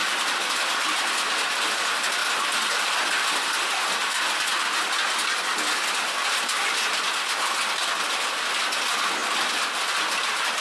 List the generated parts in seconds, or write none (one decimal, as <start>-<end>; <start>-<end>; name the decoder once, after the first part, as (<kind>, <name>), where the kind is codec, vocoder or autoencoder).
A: none